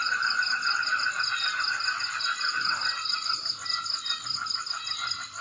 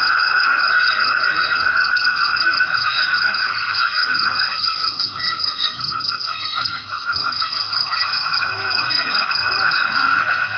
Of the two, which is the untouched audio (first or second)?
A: first